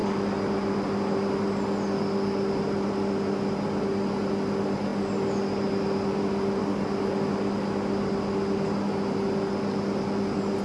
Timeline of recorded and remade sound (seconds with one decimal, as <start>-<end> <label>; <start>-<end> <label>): 0.0-10.6 recorded